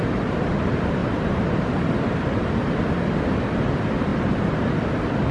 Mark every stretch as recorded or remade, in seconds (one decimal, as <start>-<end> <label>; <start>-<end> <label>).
0.0-1.0 recorded; 1.0-2.5 remade; 2.5-5.3 recorded